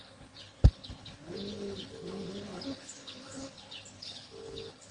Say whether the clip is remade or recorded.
remade